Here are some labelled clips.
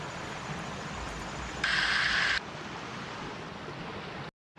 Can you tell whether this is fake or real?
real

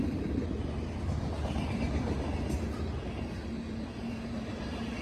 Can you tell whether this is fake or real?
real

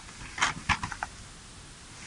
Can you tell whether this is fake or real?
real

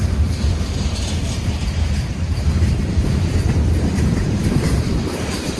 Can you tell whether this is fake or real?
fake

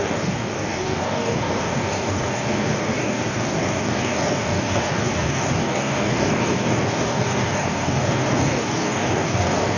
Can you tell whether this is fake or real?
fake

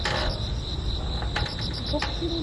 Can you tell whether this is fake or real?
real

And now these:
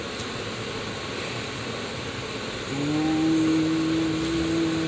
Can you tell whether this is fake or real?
real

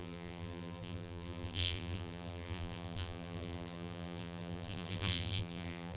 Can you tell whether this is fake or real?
fake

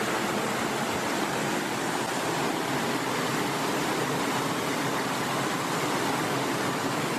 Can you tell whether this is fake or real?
real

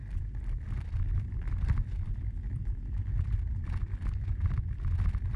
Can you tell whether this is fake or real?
real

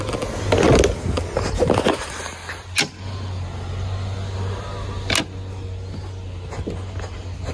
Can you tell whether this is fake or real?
real